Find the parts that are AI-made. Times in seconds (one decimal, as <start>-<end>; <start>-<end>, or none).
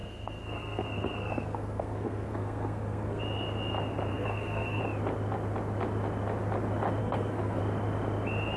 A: 0.0-3.2; 4.1-4.8; 7.0-7.6